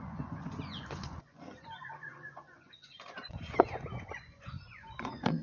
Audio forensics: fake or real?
fake